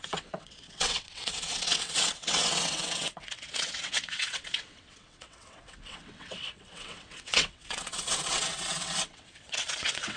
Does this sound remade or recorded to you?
remade